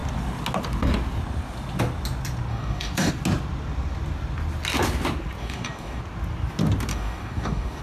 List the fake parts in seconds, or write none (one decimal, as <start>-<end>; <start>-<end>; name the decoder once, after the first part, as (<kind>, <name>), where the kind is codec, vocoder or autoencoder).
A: 2.5-3.1 (codec, DAC); 5.4-6.0; 6.9-7.8